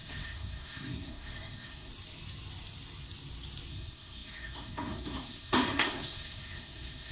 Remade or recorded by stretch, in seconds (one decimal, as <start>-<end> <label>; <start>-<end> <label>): 0.0-1.9 remade; 1.9-3.7 recorded; 3.7-7.1 remade